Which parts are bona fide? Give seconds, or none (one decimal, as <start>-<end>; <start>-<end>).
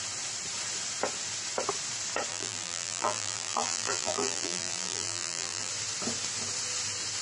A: 0.0-2.3; 5.7-7.2